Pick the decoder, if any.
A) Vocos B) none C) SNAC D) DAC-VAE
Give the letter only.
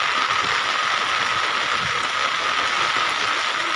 B